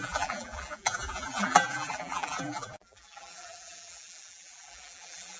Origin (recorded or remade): remade